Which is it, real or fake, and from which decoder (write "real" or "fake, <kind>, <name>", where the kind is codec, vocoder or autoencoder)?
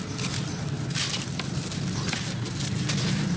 real